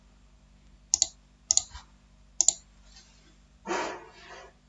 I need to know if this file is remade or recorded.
recorded